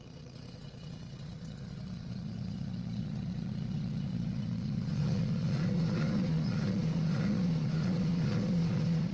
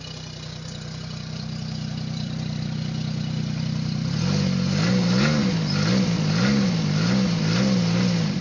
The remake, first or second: first